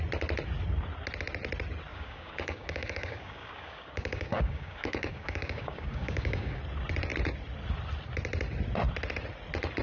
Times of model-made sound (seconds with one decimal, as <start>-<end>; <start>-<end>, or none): 1.9-6.6